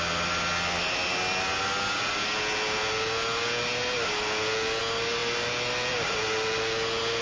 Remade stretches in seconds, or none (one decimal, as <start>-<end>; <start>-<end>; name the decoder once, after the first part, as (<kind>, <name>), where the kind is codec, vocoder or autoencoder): none